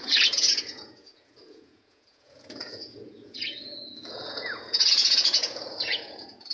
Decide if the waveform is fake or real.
fake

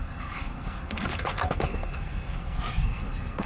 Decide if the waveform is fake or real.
fake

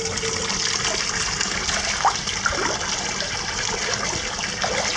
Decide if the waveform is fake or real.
real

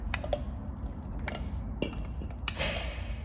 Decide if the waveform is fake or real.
real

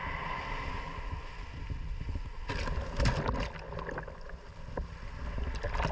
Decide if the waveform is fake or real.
real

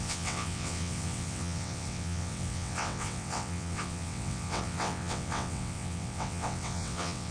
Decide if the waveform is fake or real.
fake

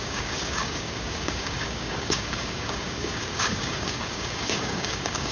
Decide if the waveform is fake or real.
fake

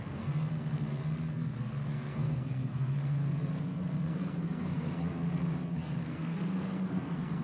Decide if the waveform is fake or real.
fake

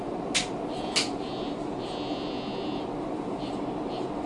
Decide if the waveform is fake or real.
real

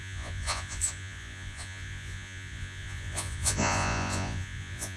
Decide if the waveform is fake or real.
fake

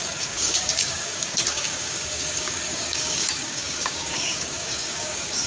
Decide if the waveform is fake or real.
fake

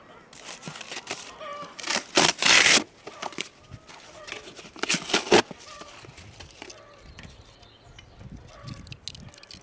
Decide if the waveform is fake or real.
real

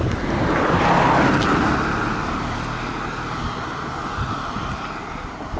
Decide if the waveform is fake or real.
real